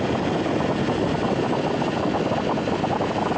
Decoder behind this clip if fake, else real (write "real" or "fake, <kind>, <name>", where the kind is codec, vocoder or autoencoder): real